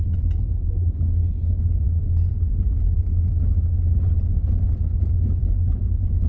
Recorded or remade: recorded